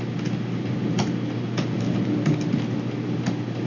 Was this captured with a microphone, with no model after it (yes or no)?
yes